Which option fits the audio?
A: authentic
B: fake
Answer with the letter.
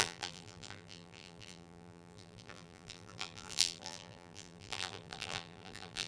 B